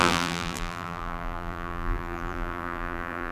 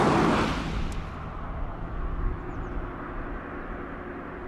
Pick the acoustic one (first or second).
second